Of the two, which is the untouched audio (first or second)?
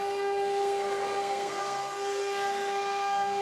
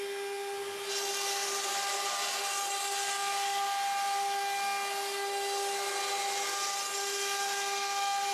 second